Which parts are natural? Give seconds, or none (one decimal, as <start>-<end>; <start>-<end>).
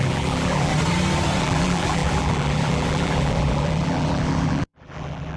0.7-1.4